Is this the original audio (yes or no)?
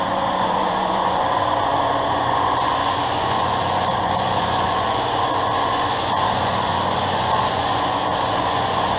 no